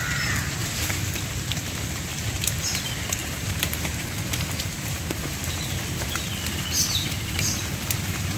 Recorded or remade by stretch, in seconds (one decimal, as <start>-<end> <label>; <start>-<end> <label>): 0.0-0.6 recorded; 0.6-1.2 remade; 1.2-3.2 recorded; 3.2-6.2 remade; 6.2-8.4 recorded